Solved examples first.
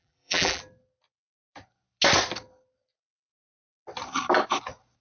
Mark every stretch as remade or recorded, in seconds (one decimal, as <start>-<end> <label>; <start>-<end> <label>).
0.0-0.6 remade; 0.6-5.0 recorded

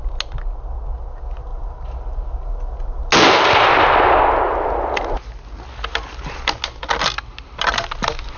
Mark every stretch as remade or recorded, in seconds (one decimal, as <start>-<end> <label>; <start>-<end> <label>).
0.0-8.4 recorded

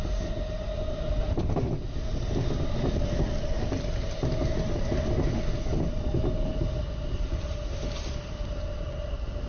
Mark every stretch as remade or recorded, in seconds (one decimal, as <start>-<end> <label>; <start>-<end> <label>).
0.0-9.5 recorded